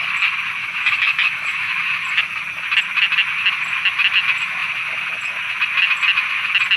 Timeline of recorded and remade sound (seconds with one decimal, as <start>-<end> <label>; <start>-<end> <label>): 0.0-0.6 recorded; 0.6-1.8 remade; 1.8-6.8 recorded